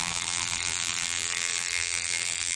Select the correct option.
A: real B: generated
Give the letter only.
B